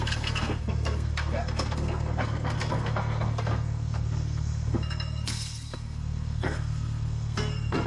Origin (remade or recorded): remade